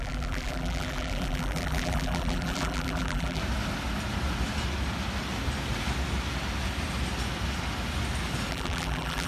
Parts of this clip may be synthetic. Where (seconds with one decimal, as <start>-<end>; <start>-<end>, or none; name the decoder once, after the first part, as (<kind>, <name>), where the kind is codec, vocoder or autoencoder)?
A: 0.0-3.4 (vocoder, BigVGAN v2); 8.5-9.3